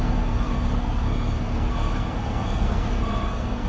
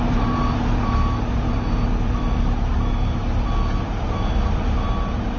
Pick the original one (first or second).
second